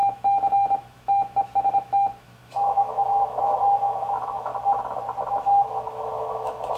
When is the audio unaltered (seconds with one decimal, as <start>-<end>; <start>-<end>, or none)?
4.5-5.3